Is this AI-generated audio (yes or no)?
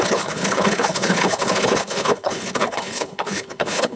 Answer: yes